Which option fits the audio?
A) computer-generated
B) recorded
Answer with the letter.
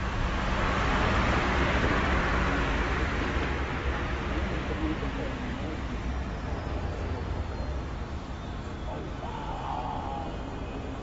B